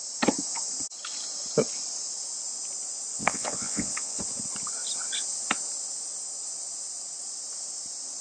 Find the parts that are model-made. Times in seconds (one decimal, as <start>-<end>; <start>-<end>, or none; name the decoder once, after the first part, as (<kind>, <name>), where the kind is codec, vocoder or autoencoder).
3.1-4.2 (vocoder, WaveNeXt)